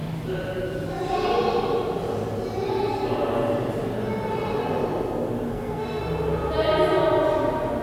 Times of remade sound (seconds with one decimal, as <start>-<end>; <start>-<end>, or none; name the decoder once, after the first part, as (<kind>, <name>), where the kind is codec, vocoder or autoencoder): 5.5-6.0 (codec, SNAC)

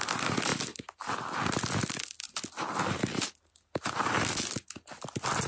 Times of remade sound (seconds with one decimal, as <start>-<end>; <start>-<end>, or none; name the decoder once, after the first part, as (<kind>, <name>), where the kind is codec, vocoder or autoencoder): none

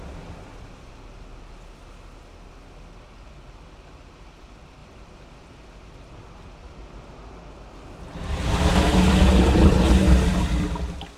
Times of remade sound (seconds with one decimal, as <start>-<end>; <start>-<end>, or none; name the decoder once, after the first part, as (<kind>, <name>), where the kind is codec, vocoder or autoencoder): none

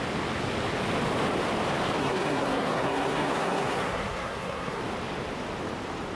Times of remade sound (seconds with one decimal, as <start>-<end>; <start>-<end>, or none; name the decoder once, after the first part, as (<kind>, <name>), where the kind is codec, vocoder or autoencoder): 2.0-4.8 (codec, SNAC)

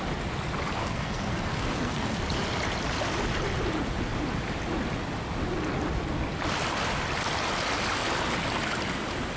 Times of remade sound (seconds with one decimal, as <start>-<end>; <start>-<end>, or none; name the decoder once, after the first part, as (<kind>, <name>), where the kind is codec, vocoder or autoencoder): 0.8-2.2 (codec, SNAC)

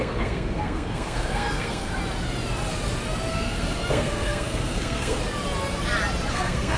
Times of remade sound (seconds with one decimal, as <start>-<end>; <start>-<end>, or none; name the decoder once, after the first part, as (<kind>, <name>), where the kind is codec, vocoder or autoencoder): 0.0-1.9 (codec, SNAC); 3.3-5.2; 6.3-6.8

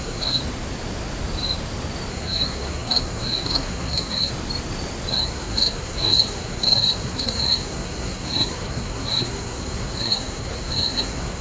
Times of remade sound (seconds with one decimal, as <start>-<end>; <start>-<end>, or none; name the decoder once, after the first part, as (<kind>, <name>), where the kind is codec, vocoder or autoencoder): 0.0-0.4 (codec, SNAC); 2.1-4.3; 5.1-11.4